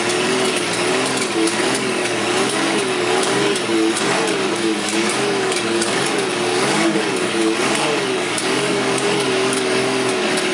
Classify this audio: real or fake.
fake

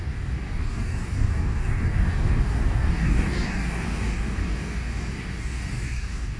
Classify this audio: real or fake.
fake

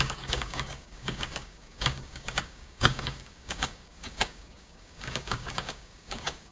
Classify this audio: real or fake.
fake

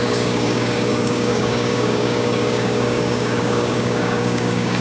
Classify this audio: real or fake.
fake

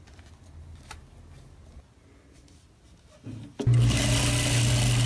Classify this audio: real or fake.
real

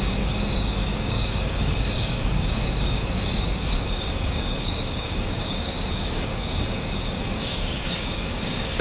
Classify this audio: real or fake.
fake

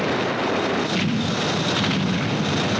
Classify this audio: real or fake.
real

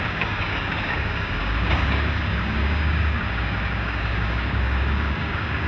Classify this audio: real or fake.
fake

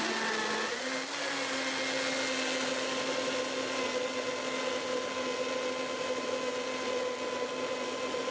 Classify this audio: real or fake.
real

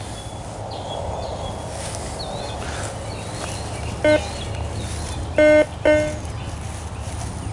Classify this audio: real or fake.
real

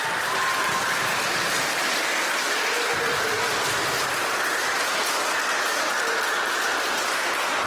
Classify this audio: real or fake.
real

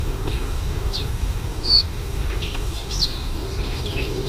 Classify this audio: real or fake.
fake